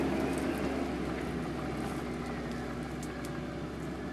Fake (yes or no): no